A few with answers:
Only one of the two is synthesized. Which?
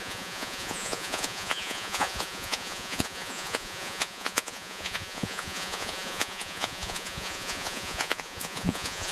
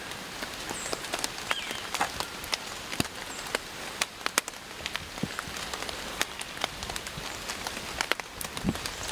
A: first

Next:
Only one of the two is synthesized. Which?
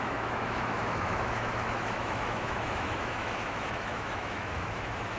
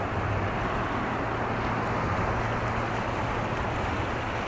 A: first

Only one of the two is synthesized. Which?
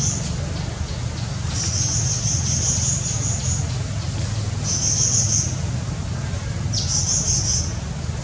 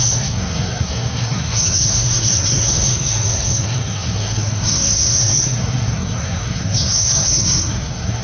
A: second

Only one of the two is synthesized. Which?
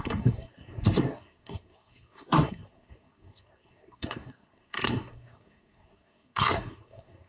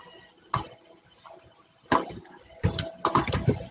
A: first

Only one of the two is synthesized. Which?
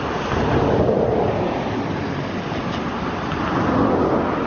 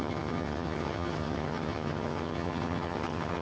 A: second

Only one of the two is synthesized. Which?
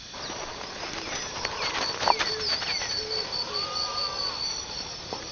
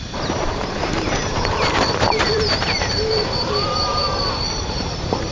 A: second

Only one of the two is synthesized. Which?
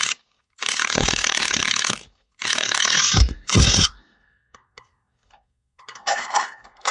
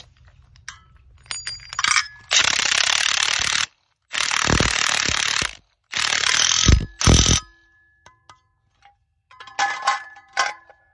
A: first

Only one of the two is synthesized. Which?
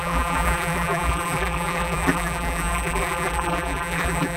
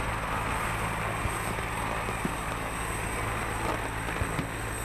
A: first